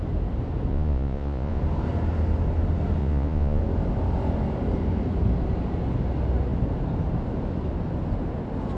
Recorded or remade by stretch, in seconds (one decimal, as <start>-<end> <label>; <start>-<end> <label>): 0.0-0.7 recorded; 0.7-1.6 remade; 1.6-3.0 recorded; 3.0-3.6 remade; 3.6-8.8 recorded